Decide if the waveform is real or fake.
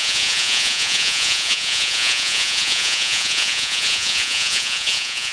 fake